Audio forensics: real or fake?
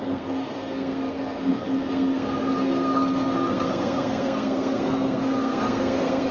fake